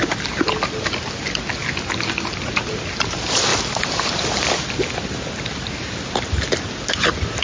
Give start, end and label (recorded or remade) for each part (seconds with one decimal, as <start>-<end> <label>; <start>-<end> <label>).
0.0-7.4 recorded